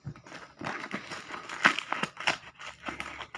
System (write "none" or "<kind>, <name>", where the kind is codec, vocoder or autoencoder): none